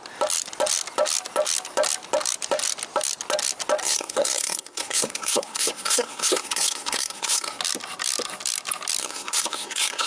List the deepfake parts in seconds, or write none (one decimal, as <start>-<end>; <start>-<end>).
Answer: 3.8-7.6; 9.0-10.1